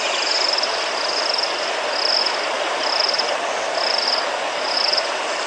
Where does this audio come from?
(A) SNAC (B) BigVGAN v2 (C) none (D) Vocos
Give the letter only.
C